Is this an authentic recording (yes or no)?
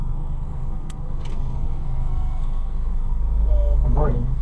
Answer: no